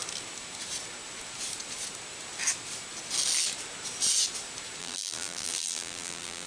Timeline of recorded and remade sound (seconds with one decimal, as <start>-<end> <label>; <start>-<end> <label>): 0.0-4.8 recorded; 4.8-6.5 remade